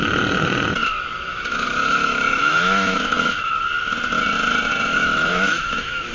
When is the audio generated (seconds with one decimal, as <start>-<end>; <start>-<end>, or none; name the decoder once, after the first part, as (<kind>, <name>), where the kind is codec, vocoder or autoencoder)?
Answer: 1.3-3.5 (autoencoder, DAC-VAE); 4.9-6.1